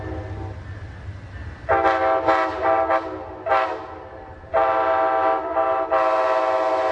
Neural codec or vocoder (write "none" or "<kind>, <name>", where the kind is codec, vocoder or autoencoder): none